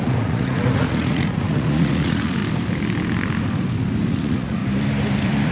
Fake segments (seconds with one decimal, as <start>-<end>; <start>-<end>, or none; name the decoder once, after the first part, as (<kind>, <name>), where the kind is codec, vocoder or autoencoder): 0.0-2.4 (vocoder, Vocos); 4.1-4.6